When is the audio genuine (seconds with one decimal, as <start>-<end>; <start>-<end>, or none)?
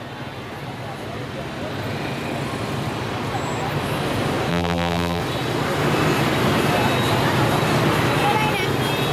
0.0-4.5; 5.2-9.1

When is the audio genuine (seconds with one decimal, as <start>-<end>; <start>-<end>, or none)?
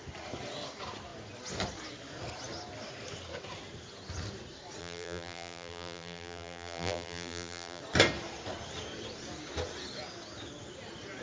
0.0-4.8; 7.8-11.2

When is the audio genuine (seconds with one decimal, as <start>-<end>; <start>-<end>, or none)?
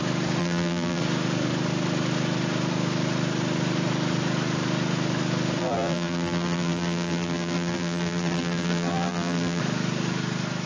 0.0-0.4; 1.0-5.6; 9.6-10.7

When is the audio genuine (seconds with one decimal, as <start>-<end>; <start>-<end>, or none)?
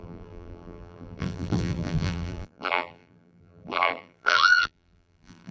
none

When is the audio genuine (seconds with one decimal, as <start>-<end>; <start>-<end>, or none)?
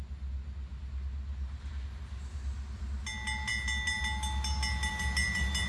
0.0-5.7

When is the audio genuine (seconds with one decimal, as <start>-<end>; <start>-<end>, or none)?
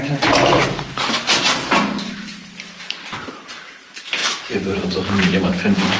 2.3-3.3